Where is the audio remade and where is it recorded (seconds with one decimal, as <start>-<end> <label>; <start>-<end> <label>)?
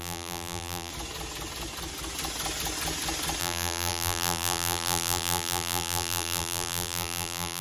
0.0-0.9 remade; 0.9-3.4 recorded; 3.4-7.6 remade